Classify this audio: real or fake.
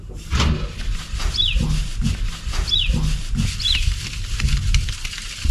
real